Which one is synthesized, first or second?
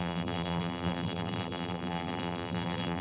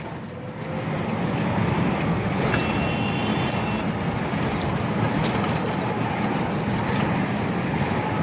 first